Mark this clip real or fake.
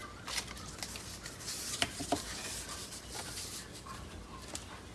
real